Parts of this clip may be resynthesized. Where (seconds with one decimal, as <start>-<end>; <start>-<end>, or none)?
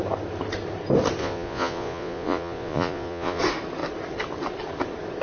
1.2-3.4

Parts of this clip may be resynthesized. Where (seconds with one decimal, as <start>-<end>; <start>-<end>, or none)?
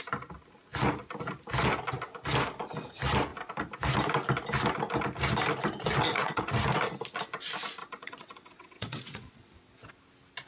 6.0-6.6; 7.8-9.9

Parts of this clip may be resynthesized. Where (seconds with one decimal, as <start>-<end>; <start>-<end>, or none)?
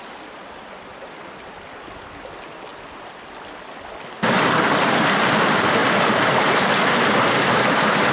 5.8-6.7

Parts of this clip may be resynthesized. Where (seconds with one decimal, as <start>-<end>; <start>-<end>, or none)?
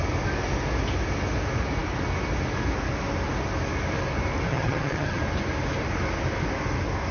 4.5-5.2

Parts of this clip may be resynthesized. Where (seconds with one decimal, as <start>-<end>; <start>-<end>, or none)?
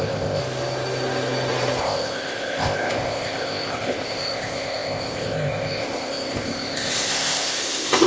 0.0-0.4; 1.8-8.1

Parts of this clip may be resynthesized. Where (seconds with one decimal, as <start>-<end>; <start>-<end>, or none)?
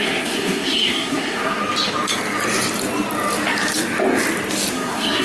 0.0-1.6; 4.7-5.2